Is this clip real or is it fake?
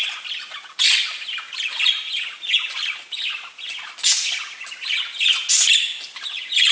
real